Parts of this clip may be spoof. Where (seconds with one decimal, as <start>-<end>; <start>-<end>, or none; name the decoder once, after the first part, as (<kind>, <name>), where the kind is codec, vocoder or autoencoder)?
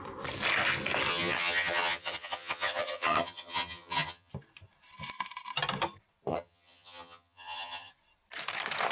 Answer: 1.1-4.3 (vocoder, HiFi-GAN); 6.3-7.9